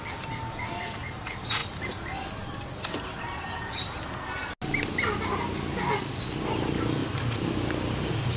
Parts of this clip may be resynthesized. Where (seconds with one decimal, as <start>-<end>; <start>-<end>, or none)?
none